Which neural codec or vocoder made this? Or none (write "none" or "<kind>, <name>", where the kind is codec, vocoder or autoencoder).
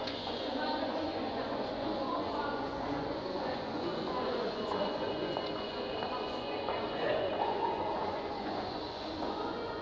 vocoder, Vocos